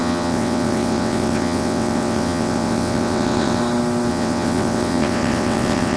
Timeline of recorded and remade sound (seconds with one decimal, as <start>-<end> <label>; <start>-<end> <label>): 0.0-3.6 remade; 3.6-4.1 recorded; 4.1-6.0 remade